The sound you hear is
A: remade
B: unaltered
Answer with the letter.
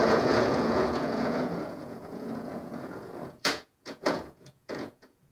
A